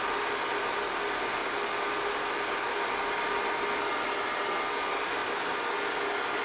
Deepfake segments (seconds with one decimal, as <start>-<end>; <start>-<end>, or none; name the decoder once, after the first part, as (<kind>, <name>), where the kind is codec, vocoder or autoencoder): none